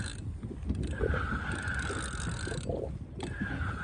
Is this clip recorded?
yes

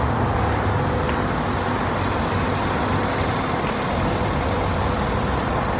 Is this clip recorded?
yes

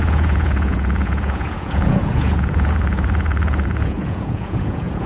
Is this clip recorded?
no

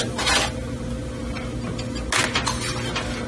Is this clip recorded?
yes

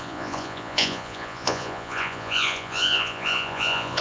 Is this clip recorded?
no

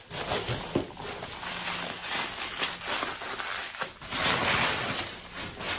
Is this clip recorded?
yes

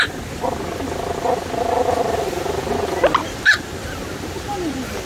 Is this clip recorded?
yes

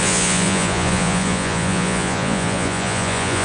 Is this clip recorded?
no